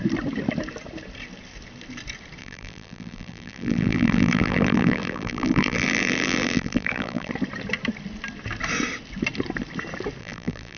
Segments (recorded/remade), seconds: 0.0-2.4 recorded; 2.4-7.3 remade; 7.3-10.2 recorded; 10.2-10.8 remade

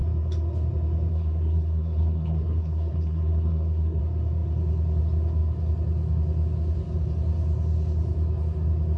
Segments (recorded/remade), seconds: 0.0-1.1 recorded; 1.1-4.0 remade; 4.0-9.0 recorded

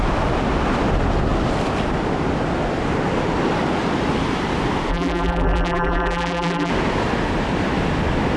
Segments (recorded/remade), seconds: 0.0-4.9 recorded; 4.9-6.7 remade; 6.7-8.4 recorded

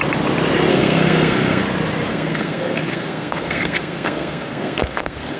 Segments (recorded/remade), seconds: 0.0-0.7 recorded; 0.7-1.6 remade; 1.6-2.1 recorded; 2.1-5.4 remade

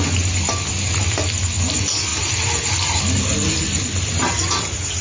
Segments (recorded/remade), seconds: 0.0-5.0 recorded

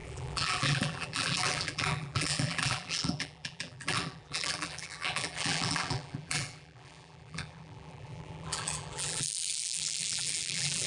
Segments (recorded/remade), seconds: 0.0-10.9 remade

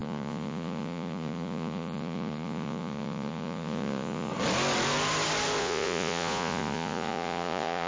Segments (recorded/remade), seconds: 0.0-4.3 remade; 4.3-5.6 recorded; 5.6-7.9 remade